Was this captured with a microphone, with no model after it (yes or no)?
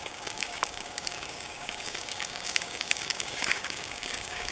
no